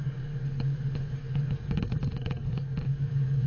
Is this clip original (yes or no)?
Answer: no